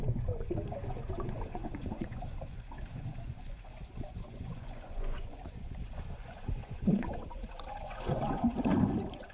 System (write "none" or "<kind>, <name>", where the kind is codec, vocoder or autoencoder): vocoder, Vocos